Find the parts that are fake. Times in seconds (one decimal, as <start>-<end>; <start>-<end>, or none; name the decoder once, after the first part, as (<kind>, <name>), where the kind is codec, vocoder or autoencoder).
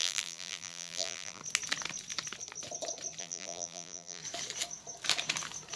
0.0-1.4 (vocoder, BigVGAN v2); 3.2-4.2